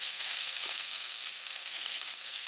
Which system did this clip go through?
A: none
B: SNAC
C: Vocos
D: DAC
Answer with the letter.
B